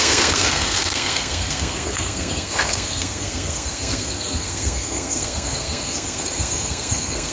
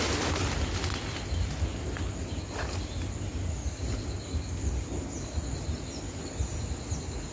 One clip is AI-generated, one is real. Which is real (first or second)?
second